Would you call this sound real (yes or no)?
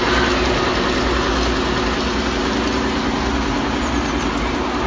yes